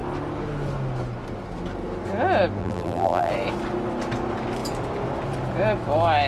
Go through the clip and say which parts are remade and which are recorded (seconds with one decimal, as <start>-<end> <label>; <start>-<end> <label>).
0.0-2.6 recorded; 2.6-3.3 remade; 3.3-6.3 recorded